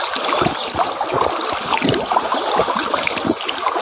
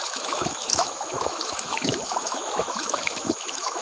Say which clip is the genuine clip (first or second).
first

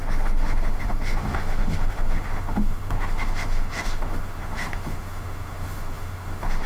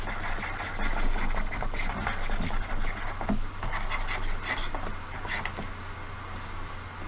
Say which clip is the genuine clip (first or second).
second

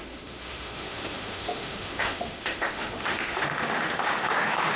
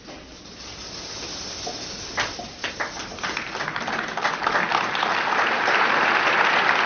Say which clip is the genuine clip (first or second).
second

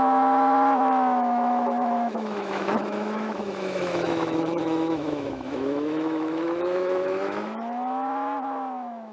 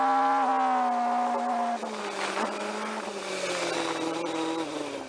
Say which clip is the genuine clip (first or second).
second